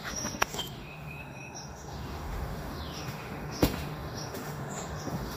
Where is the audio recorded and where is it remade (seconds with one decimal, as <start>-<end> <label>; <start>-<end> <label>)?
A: 0.0-5.4 remade